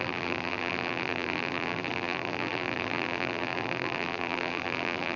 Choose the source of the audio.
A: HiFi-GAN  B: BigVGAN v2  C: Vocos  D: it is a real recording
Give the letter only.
B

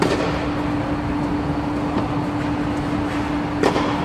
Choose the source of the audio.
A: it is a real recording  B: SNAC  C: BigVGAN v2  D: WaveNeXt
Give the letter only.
A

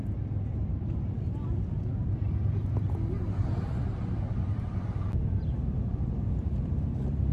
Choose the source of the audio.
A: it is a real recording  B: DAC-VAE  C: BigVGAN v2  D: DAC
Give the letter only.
C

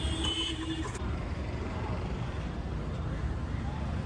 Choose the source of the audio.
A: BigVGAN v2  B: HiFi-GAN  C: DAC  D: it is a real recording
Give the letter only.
A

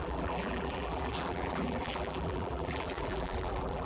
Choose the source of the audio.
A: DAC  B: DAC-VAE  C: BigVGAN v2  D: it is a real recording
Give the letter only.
C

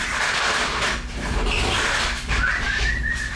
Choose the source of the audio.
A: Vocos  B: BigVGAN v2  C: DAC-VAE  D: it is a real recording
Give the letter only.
B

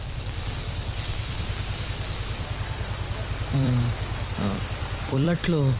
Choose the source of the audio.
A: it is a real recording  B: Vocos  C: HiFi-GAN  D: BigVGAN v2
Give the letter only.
D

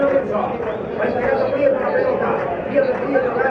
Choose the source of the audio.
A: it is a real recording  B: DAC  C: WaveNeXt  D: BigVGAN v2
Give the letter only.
D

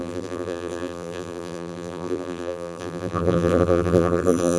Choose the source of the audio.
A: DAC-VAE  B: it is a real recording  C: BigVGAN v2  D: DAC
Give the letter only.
C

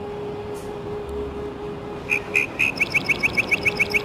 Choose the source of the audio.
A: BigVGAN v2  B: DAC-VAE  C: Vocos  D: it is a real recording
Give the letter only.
D